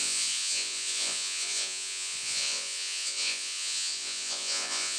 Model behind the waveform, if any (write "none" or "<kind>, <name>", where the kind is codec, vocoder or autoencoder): vocoder, Vocos